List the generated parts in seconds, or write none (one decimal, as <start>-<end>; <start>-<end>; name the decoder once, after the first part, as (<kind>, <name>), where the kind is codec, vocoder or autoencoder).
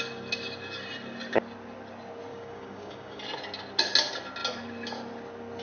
2.3-3.2 (codec, DAC)